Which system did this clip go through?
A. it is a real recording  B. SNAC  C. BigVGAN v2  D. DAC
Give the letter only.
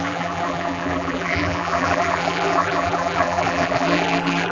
C